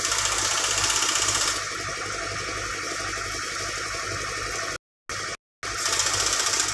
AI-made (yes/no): no